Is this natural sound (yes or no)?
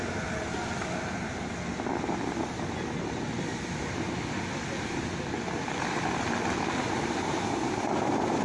yes